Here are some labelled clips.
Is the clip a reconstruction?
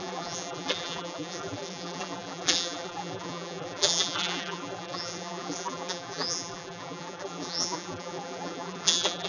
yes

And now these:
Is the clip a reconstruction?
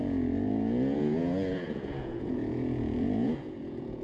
yes